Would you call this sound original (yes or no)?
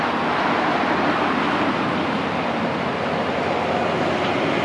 yes